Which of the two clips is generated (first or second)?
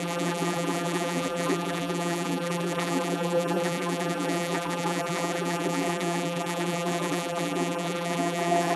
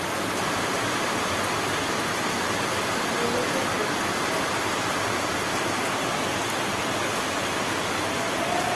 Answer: first